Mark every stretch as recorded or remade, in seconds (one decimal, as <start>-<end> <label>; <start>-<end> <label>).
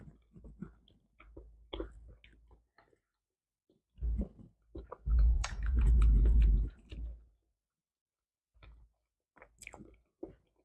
0.0-5.1 recorded; 5.1-6.9 remade; 6.9-10.6 recorded